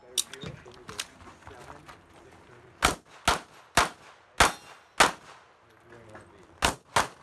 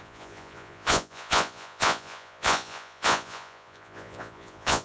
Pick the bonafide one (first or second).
first